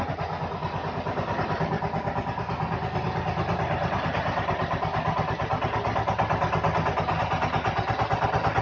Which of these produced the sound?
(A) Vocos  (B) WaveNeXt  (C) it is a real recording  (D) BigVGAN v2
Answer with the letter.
C